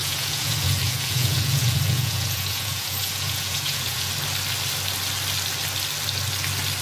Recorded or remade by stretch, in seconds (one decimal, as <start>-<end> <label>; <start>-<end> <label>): 0.0-4.1 remade; 4.1-6.8 recorded